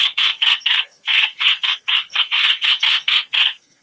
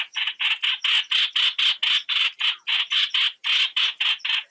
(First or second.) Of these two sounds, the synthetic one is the first